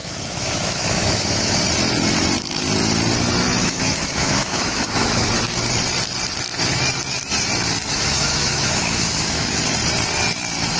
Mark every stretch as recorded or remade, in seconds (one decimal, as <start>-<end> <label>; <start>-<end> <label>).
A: 0.0-1.6 remade; 1.6-3.6 recorded; 3.6-5.3 remade; 5.3-7.9 recorded; 7.9-9.6 remade; 9.6-10.8 recorded